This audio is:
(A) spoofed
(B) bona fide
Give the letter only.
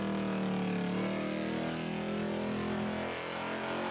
B